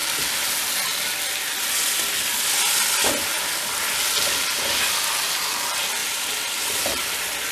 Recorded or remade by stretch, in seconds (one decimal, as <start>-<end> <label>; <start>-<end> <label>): 0.0-6.0 recorded; 6.0-7.0 remade; 7.0-7.5 recorded